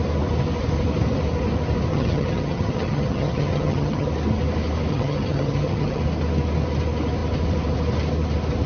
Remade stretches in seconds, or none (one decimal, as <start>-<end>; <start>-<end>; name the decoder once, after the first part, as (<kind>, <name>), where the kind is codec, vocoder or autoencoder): 1.9-4.1 (vocoder, HiFi-GAN); 4.9-6.0